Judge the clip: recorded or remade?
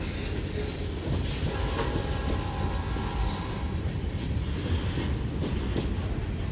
recorded